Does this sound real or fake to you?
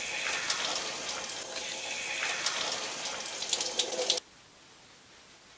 real